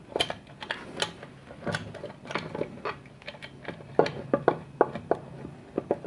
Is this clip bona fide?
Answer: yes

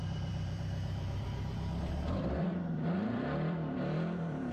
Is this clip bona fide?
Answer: no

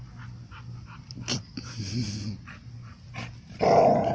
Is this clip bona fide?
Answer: yes